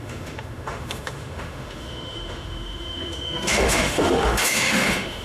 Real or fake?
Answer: fake